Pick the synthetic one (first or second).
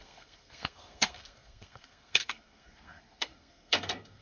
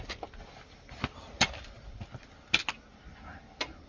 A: first